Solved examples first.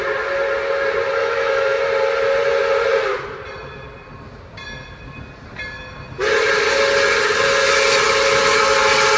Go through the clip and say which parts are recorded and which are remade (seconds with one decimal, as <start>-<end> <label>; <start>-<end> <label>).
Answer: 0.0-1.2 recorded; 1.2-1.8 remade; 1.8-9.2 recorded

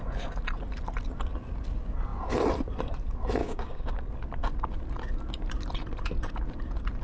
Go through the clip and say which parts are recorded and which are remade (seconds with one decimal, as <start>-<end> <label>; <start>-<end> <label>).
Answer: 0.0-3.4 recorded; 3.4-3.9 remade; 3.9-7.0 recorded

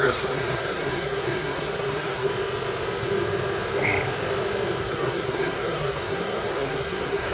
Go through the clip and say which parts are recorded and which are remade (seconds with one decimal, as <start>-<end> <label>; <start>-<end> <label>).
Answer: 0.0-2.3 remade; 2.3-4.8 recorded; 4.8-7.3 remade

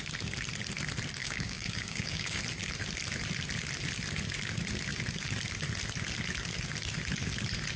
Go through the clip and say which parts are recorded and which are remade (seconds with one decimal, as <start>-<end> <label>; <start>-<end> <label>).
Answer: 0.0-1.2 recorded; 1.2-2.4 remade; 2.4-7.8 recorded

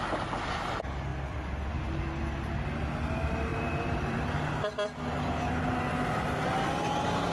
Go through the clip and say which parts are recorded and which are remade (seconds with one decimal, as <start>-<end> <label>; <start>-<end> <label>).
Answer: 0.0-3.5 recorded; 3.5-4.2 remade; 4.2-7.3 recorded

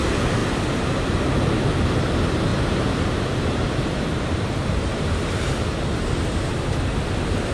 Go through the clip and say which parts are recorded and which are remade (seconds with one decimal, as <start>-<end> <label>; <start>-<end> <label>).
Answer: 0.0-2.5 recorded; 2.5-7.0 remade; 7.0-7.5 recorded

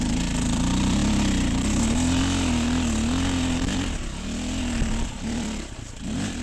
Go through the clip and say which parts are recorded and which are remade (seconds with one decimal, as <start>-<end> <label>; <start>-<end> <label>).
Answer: 0.0-1.0 remade; 1.0-4.8 recorded; 4.8-6.4 remade